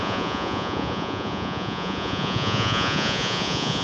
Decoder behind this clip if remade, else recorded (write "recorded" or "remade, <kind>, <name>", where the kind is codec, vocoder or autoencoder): remade, vocoder, Vocos